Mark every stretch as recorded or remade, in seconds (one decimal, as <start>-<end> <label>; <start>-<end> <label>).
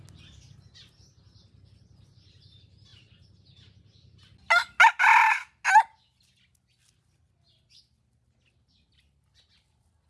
0.0-10.1 recorded